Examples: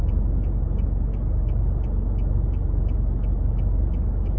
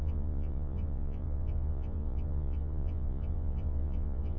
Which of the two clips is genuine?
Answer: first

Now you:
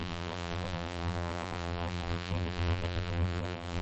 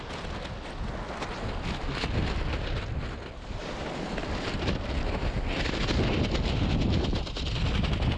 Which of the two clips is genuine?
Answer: second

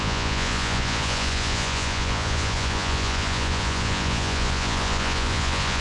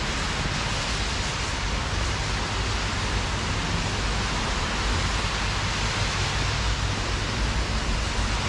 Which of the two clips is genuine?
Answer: second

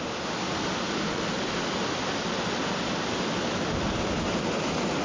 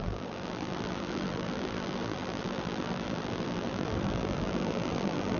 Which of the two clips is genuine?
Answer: first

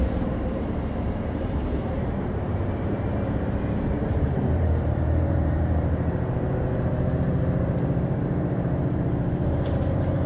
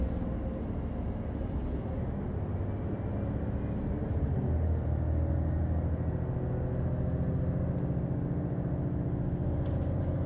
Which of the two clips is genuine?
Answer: second